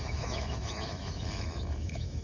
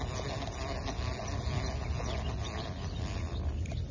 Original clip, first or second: second